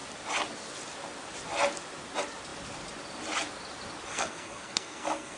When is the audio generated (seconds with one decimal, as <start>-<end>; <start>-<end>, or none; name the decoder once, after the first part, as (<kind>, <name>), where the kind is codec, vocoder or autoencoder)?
4.1-5.4 (codec, SNAC)